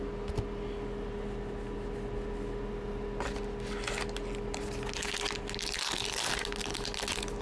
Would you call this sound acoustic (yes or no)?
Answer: yes